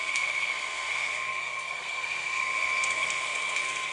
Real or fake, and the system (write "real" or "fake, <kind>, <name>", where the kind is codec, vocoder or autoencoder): fake, codec, SNAC